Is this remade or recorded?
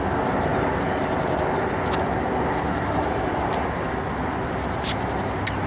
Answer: recorded